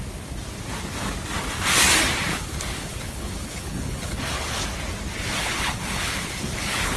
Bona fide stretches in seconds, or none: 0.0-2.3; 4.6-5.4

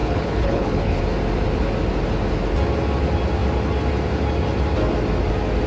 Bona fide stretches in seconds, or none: 1.0-5.7